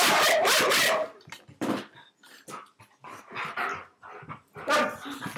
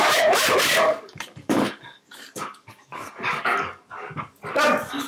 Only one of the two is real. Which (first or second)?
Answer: first